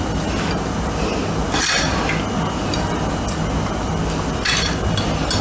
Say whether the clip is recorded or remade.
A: recorded